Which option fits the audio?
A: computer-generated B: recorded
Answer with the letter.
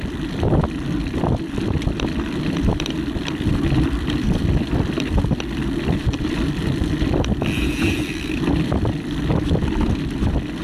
A